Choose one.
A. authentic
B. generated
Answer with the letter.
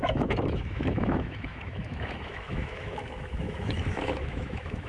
B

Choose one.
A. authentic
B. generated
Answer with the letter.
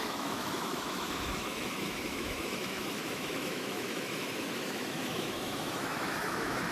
B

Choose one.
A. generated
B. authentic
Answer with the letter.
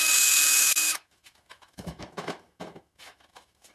A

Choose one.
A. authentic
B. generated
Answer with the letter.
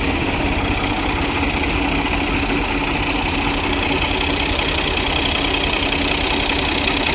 A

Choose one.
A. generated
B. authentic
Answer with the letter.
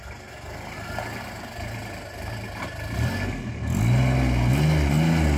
B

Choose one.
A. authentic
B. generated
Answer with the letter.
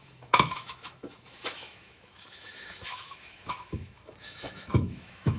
B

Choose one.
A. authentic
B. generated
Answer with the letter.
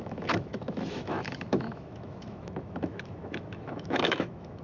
B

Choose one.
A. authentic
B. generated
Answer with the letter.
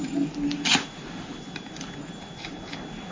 A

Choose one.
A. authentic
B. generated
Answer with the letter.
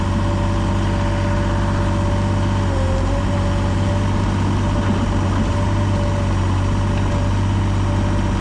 A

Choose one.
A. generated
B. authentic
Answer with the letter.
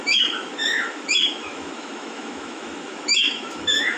A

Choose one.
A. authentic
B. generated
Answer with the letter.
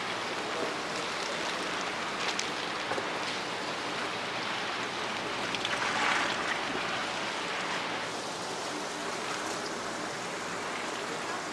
A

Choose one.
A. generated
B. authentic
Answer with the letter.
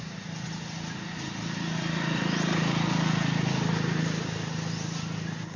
B